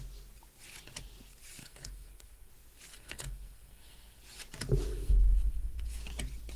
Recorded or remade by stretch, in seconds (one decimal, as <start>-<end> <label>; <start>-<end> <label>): 0.0-1.6 recorded; 1.6-2.5 remade; 2.5-2.9 recorded; 2.9-4.2 remade; 4.2-4.9 recorded; 4.9-6.0 remade; 6.0-6.6 recorded